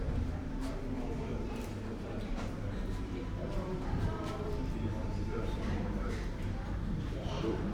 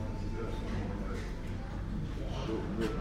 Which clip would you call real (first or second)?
second